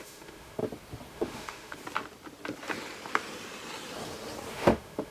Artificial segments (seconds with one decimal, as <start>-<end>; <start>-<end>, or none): 0.0-0.6; 1.1-1.8; 4.5-5.1